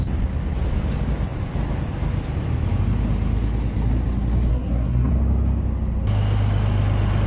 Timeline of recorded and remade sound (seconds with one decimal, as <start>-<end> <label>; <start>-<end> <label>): 0.0-4.5 recorded; 4.5-5.1 remade; 5.1-7.3 recorded